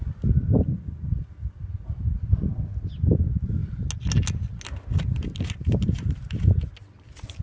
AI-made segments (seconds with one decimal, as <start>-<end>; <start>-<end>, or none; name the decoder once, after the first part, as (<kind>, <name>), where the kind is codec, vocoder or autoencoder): none